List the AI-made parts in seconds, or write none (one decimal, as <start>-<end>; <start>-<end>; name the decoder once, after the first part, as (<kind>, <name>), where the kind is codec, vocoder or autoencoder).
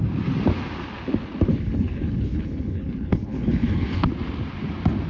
1.5-4.1 (codec, HILCodec)